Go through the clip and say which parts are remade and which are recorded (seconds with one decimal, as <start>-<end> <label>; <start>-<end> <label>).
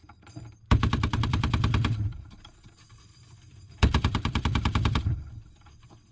0.0-2.7 remade; 2.7-3.1 recorded; 3.1-5.0 remade; 5.0-6.1 recorded